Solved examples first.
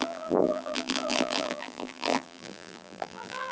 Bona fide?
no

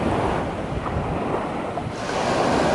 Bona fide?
yes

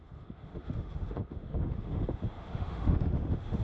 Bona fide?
no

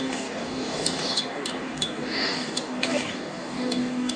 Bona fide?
no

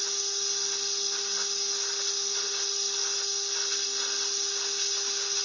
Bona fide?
yes